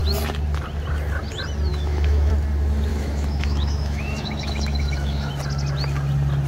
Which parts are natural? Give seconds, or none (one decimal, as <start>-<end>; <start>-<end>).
0.0-1.7; 2.3-2.9; 5.3-6.5